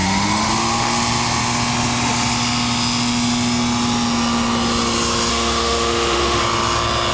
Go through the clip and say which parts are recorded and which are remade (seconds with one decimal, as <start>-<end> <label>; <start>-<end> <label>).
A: 0.0-0.5 remade; 0.5-5.3 recorded; 5.3-6.4 remade; 6.4-7.1 recorded